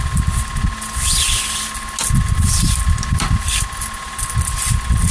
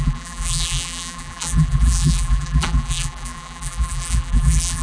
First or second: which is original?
first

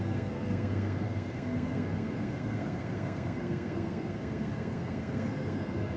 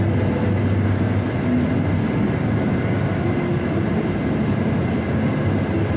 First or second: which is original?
second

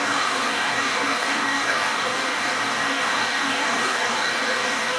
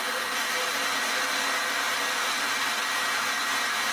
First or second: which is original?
second